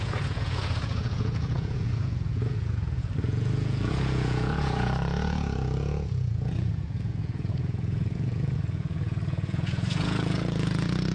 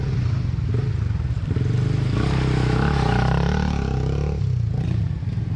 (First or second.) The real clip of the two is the second